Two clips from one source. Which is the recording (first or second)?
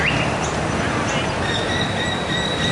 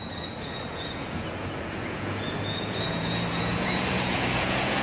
first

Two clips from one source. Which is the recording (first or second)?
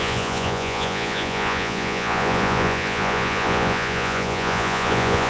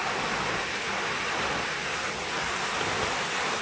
second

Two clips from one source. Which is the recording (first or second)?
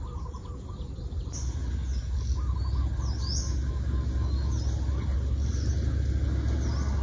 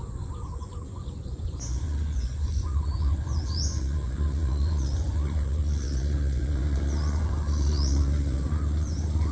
first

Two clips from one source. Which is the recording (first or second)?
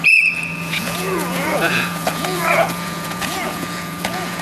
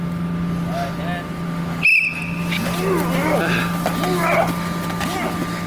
second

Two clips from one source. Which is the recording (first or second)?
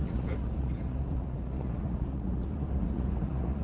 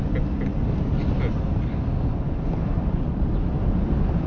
second